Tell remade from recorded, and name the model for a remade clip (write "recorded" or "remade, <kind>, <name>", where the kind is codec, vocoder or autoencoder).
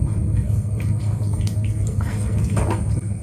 remade, codec, SNAC